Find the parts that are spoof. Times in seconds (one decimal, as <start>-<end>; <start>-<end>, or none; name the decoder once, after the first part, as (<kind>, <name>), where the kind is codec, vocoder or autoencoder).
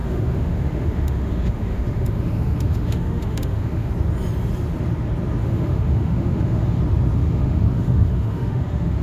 0.0-3.9 (autoencoder, DAC-VAE); 5.4-6.8; 7.2-9.0